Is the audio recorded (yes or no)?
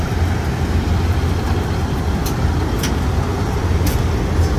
yes